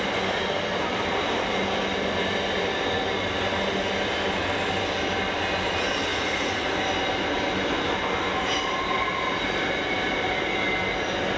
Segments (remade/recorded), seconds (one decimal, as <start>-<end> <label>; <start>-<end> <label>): 0.0-6.1 recorded; 6.1-6.7 remade; 6.7-11.4 recorded